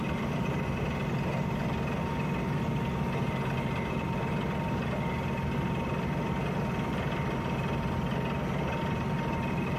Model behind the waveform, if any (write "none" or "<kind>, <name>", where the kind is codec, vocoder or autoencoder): none